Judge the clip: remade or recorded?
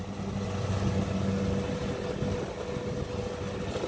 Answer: recorded